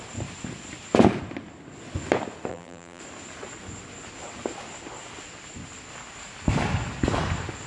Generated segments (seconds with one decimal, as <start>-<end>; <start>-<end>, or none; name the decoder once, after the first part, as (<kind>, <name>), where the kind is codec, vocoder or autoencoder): 2.5-3.0 (vocoder, BigVGAN v2)